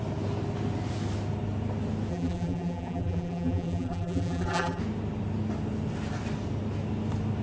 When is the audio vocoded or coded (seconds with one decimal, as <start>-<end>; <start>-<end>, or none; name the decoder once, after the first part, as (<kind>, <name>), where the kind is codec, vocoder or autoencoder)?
2.1-4.8 (vocoder, BigVGAN v2)